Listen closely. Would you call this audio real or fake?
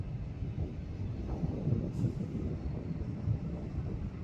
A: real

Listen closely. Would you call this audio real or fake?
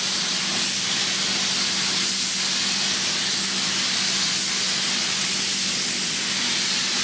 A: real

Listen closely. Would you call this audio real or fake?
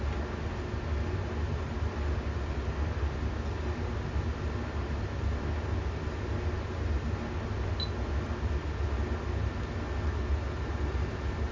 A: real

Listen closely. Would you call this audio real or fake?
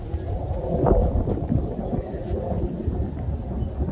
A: real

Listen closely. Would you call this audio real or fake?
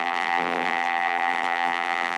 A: fake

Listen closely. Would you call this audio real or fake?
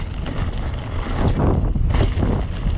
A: real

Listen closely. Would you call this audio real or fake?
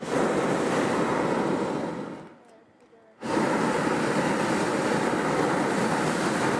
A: real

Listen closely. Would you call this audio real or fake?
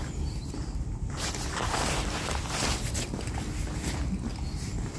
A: real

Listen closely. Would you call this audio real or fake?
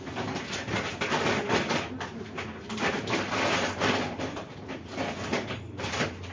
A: real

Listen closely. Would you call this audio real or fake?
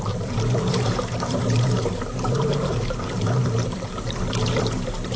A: fake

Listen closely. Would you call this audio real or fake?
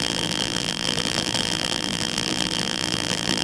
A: fake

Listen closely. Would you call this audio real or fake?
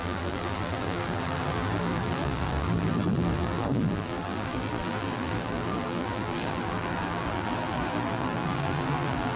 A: fake